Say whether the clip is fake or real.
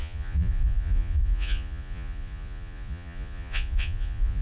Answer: fake